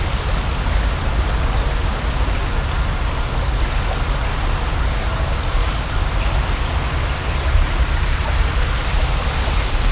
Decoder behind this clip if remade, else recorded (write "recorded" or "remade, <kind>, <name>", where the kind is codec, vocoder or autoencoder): recorded